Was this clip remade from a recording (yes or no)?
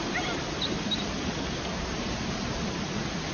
no